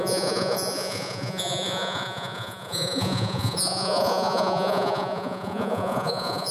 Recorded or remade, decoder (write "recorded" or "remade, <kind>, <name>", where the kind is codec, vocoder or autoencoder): remade, vocoder, Vocos